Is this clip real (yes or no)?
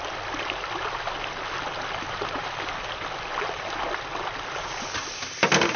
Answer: yes